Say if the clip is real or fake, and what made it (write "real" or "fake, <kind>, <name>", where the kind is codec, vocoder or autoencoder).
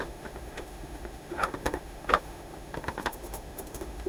fake, autoencoder, DAC-VAE